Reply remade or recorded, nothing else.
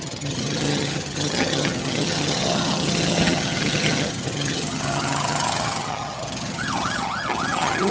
remade